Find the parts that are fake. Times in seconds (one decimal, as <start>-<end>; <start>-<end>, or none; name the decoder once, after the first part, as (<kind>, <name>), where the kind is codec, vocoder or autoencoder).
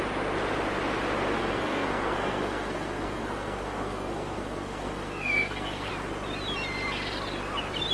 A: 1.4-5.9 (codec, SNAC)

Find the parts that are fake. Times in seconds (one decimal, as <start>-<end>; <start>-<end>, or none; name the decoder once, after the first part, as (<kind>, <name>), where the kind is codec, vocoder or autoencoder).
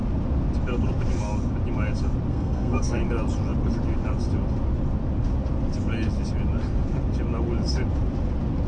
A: 2.3-3.0 (codec, SNAC)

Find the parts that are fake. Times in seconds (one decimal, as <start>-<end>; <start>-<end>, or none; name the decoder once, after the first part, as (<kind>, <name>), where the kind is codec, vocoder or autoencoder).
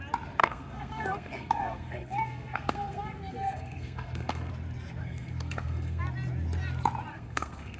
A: 0.4-4.5 (codec, SNAC); 5.0-6.0; 7.1-7.8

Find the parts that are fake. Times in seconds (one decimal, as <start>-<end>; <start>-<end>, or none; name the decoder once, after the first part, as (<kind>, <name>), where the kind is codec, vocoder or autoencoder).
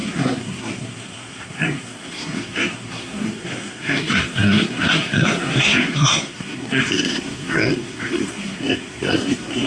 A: 0.0-9.7 (codec, SNAC)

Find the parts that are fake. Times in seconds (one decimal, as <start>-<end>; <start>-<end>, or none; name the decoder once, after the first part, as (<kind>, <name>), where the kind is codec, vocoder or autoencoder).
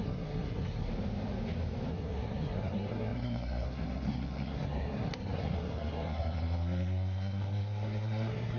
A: 0.0-0.9 (codec, SNAC); 1.9-8.6